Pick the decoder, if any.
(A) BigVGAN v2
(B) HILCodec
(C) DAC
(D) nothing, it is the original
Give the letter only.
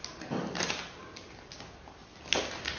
D